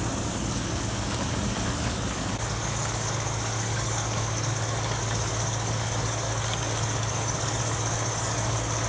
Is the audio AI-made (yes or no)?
yes